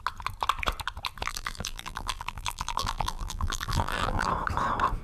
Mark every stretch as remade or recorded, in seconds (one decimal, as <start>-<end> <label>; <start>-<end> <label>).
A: 0.0-1.3 recorded; 1.3-4.3 remade; 4.3-5.0 recorded